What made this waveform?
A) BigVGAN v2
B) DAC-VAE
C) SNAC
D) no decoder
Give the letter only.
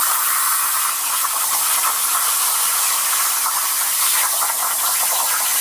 D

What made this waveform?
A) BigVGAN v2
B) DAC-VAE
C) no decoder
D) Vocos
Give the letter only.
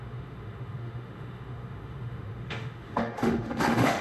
B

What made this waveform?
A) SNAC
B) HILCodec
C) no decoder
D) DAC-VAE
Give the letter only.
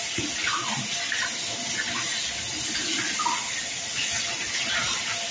C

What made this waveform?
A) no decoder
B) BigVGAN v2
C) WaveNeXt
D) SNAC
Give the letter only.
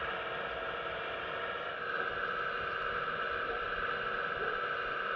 A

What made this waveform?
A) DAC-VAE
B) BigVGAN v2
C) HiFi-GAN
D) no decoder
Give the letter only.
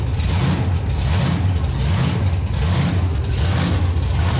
D